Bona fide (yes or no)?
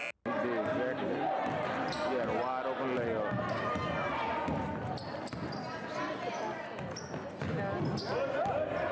yes